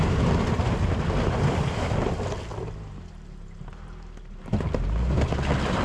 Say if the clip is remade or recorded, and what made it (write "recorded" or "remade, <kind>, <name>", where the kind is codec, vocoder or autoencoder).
recorded